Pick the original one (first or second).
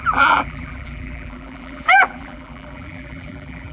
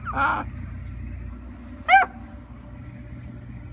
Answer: second